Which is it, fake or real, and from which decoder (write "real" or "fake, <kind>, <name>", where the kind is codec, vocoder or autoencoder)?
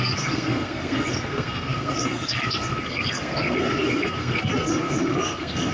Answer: fake, codec, SNAC